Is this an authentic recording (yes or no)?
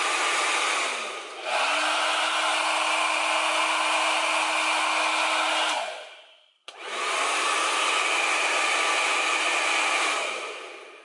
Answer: yes